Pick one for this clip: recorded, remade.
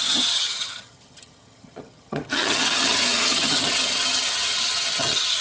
remade